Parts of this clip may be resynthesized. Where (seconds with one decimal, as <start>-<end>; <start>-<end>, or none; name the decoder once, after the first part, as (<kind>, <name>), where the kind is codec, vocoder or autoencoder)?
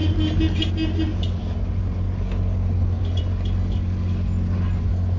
none